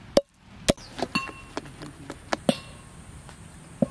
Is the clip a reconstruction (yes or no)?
no